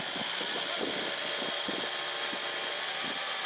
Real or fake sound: real